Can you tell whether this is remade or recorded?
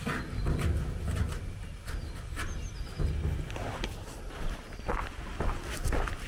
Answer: recorded